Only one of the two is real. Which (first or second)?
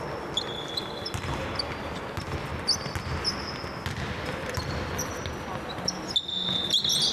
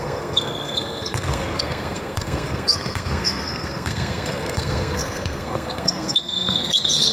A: first